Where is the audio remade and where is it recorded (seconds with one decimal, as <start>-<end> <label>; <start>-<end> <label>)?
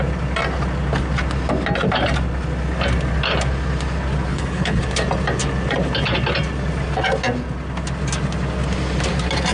0.0-4.3 recorded; 4.3-4.8 remade; 4.8-9.5 recorded